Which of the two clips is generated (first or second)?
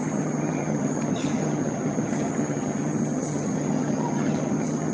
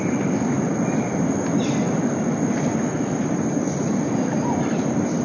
first